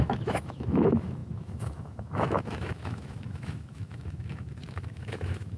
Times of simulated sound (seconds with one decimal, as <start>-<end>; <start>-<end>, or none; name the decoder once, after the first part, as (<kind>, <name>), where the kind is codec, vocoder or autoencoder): 0.0-5.6 (autoencoder, DAC-VAE)